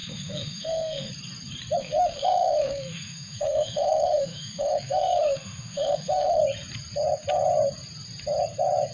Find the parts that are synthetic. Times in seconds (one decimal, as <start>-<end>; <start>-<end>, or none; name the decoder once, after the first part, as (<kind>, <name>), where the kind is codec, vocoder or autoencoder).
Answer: 0.0-1.1 (autoencoder, DAC-VAE); 1.8-6.4